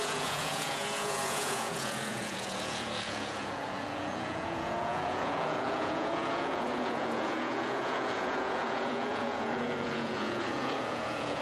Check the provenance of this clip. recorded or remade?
remade